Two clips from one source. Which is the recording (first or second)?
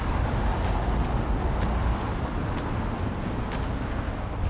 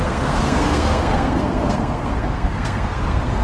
first